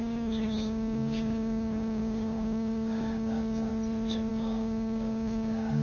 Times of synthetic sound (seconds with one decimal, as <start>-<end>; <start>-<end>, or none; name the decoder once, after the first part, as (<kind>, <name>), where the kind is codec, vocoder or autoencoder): 0.0-3.7 (codec, DAC); 4.3-5.8